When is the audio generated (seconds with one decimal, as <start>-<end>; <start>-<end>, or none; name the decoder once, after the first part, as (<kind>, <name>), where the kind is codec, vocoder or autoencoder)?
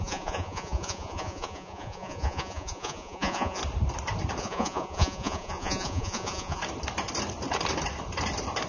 0.0-3.6 (vocoder, Vocos); 4.4-6.6